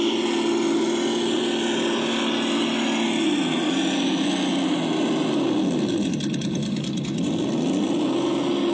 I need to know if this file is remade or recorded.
recorded